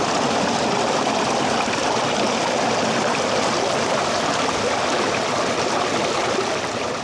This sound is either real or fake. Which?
fake